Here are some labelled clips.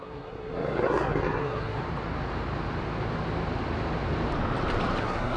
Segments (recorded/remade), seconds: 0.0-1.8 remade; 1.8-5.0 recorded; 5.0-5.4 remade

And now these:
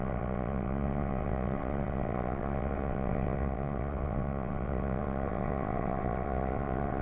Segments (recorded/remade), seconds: 0.0-7.0 remade

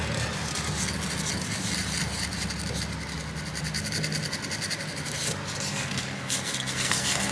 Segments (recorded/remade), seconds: 0.0-5.7 recorded; 5.7-7.3 remade

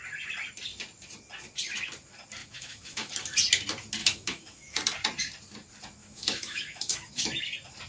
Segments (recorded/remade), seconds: 0.0-2.4 recorded; 2.4-3.1 remade; 3.1-4.0 recorded; 4.0-4.8 remade; 4.8-6.0 recorded; 6.0-7.4 remade; 7.4-7.9 recorded

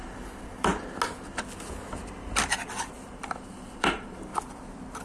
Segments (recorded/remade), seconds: 0.0-0.7 remade; 0.7-2.9 recorded; 2.9-4.3 remade; 4.3-5.0 recorded

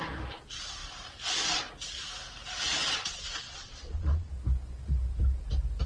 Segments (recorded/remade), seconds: 0.0-2.8 recorded; 2.8-4.3 remade; 4.3-5.9 recorded

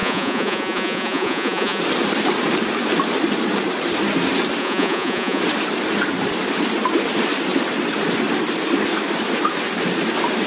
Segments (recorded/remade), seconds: 0.0-1.8 remade; 1.8-4.6 recorded; 4.6-5.4 remade; 5.4-10.5 recorded

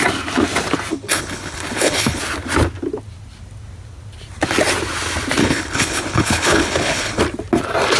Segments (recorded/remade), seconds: 0.0-0.9 recorded; 0.9-2.2 remade; 2.2-5.4 recorded; 5.4-7.2 remade; 7.2-8.0 recorded